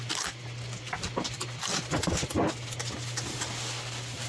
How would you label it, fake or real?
real